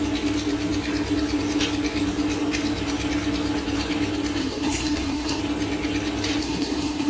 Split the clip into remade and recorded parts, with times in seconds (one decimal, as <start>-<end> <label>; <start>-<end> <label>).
0.0-4.4 recorded; 4.4-5.4 remade; 5.4-6.4 recorded; 6.4-7.1 remade